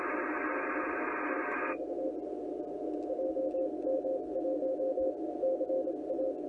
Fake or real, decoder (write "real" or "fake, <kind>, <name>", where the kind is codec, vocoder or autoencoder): real